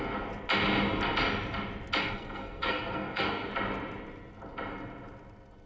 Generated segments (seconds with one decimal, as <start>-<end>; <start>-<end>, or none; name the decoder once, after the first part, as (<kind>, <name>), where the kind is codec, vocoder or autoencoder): 2.0-3.5 (codec, SNAC)